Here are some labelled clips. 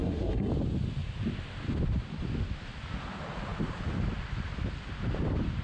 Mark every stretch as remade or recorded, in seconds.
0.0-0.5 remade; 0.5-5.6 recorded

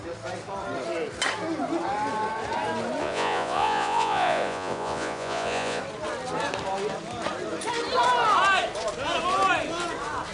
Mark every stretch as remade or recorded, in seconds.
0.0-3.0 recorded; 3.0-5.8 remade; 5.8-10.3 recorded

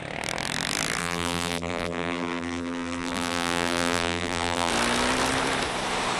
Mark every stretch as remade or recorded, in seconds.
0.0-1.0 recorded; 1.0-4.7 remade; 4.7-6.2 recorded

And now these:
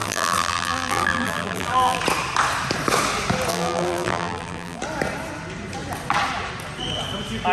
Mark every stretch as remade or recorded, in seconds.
0.0-2.0 remade; 2.0-3.5 recorded; 3.5-4.8 remade; 4.8-7.5 recorded

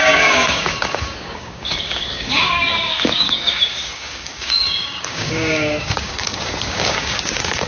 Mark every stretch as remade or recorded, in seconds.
0.0-7.7 remade

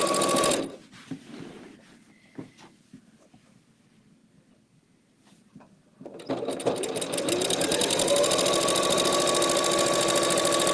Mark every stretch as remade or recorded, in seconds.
0.0-10.7 recorded